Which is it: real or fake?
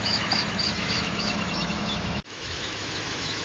fake